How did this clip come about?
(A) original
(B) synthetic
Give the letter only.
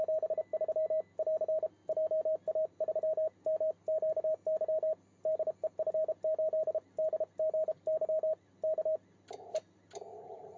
A